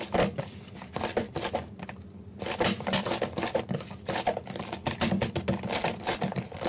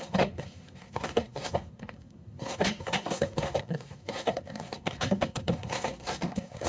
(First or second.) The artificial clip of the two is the second